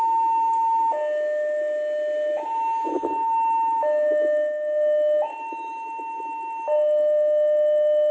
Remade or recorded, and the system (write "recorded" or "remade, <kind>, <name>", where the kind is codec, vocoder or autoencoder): recorded